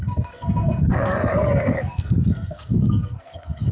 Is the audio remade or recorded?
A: remade